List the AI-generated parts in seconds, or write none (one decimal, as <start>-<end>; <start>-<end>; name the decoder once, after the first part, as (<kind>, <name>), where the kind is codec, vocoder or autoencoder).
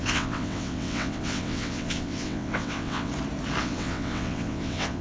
0.0-3.1 (vocoder, WaveNeXt); 3.6-5.0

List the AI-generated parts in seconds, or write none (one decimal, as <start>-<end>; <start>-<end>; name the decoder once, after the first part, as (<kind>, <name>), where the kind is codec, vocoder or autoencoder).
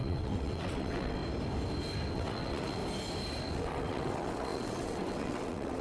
0.0-1.2 (vocoder, WaveNeXt); 2.1-2.8; 3.5-5.8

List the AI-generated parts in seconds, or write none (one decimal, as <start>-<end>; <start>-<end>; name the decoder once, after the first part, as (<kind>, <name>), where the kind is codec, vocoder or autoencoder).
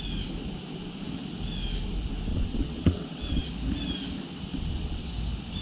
2.3-3.5 (vocoder, WaveNeXt); 4.5-5.1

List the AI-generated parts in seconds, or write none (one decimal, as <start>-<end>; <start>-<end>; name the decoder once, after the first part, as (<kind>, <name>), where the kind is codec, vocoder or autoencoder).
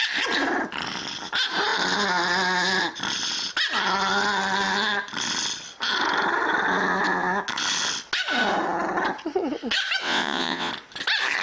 10.0-10.7 (vocoder, WaveNeXt)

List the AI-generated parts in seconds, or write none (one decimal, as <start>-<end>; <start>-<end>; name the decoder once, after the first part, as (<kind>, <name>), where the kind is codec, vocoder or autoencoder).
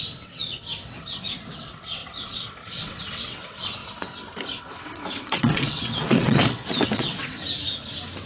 0.0-3.8 (vocoder, WaveNeXt); 4.6-7.4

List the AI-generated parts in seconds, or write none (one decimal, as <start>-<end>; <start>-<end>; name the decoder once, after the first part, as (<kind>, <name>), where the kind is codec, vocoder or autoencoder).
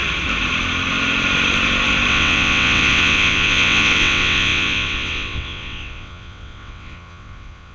2.1-7.7 (vocoder, WaveNeXt)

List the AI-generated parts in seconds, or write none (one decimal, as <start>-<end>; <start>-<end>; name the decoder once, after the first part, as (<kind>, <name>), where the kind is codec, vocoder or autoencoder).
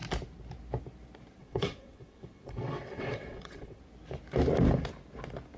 1.4-3.8 (vocoder, WaveNeXt)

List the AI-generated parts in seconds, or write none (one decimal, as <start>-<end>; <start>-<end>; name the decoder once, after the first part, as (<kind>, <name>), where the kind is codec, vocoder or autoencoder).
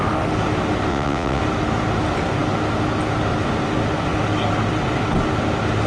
0.9-1.4 (vocoder, WaveNeXt)